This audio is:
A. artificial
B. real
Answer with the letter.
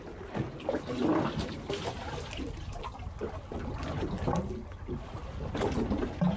B